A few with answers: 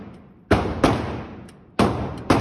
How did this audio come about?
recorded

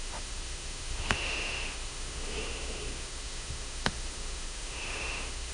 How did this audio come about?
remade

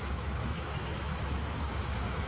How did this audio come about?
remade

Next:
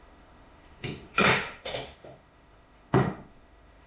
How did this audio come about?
remade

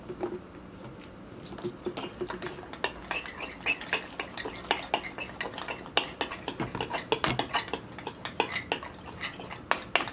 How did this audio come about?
recorded